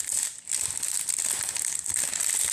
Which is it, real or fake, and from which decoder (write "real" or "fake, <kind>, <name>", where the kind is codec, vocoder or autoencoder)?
real